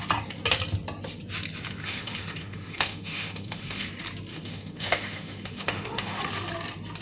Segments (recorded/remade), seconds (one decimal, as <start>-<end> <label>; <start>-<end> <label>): 0.0-1.8 recorded; 1.8-3.9 remade; 3.9-4.3 recorded; 4.3-6.2 remade; 6.2-7.0 recorded